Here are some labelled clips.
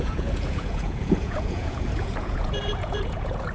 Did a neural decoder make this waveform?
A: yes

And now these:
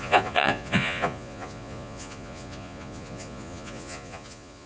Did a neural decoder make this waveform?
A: yes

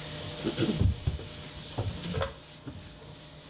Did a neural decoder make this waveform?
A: no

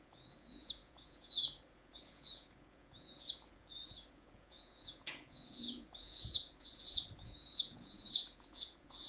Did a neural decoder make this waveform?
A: yes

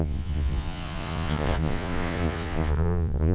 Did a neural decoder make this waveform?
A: yes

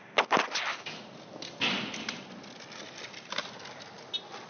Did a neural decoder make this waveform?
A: no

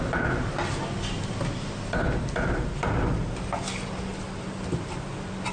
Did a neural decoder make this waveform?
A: no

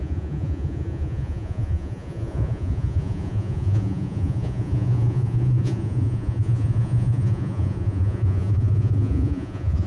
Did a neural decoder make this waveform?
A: yes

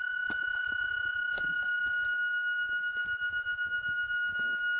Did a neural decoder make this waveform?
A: no